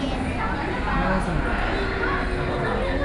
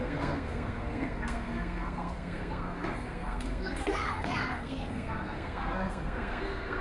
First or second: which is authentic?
first